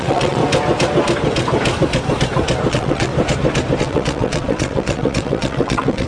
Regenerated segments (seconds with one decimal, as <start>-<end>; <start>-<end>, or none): 0.0-0.4; 2.7-3.1; 3.8-6.1